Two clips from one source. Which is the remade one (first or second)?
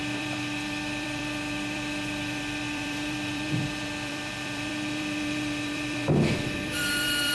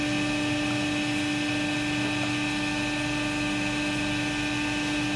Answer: first